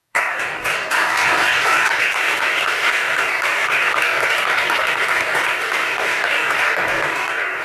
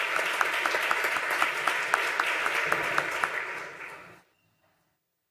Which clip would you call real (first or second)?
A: second